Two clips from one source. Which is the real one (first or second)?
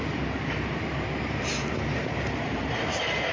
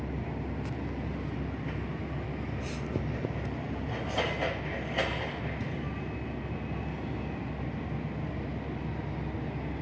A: second